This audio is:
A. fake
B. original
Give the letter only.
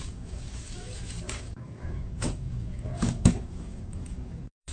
A